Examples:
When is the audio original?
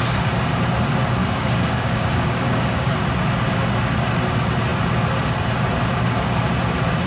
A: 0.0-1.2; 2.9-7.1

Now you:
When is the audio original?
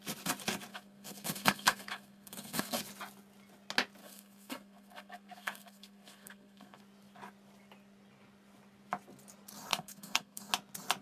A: 0.0-0.7; 2.8-4.0; 6.8-9.7; 10.5-11.0